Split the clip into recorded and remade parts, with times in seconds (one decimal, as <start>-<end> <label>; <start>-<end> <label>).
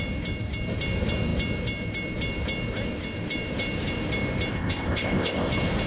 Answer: 0.0-4.5 recorded; 4.5-5.5 remade; 5.5-5.9 recorded